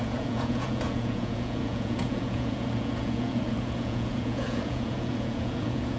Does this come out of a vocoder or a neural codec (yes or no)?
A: yes